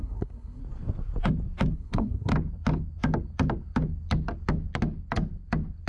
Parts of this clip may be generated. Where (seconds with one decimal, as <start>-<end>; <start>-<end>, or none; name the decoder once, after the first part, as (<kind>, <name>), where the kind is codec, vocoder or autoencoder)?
0.0-0.6 (codec, SNAC); 1.7-2.3